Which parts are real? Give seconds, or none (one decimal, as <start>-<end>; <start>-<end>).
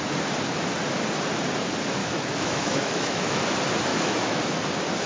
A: 0.0-2.0; 3.4-3.9; 4.4-5.1